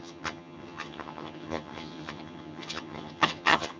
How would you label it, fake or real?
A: fake